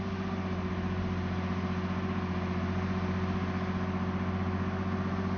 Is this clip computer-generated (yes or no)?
no